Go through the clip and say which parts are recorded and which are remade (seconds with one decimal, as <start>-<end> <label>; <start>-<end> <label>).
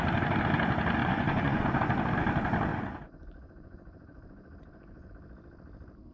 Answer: 0.0-1.0 recorded; 1.0-1.8 remade; 1.8-2.7 recorded; 2.7-5.1 remade; 5.1-6.1 recorded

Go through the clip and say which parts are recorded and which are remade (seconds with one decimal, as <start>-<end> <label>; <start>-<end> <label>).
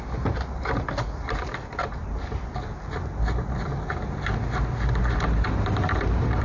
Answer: 0.0-6.4 recorded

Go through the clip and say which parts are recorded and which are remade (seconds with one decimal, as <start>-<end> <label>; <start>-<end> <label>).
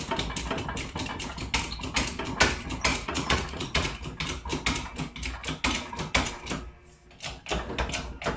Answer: 0.0-2.9 recorded; 2.9-4.0 remade; 4.0-8.4 recorded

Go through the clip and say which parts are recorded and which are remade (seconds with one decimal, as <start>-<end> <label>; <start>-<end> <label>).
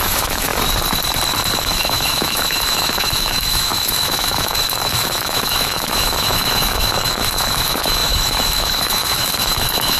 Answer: 0.0-0.5 remade; 0.5-1.6 recorded; 1.6-10.0 remade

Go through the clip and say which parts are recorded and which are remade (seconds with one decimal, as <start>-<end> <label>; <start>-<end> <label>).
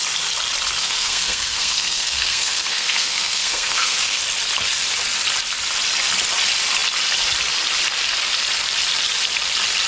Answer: 0.0-0.8 recorded; 0.8-4.2 remade; 4.2-9.9 recorded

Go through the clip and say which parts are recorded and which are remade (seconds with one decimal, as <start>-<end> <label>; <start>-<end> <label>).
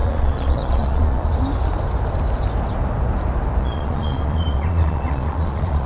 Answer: 0.0-1.3 remade; 1.3-3.6 recorded; 3.6-5.9 remade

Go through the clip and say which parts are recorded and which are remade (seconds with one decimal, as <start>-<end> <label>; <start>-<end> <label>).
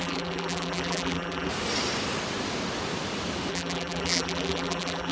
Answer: 0.0-1.5 remade; 1.5-3.5 recorded; 3.5-5.1 remade